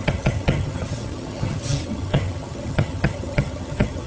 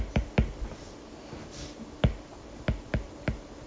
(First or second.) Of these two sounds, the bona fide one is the second